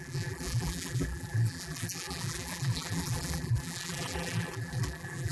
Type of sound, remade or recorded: remade